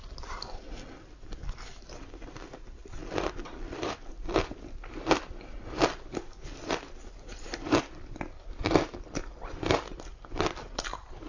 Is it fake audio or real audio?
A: fake